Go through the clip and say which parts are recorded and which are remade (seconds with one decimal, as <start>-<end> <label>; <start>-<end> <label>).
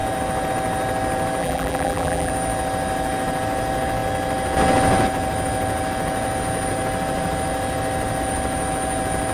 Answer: 0.0-1.4 recorded; 1.4-2.3 remade; 2.3-9.3 recorded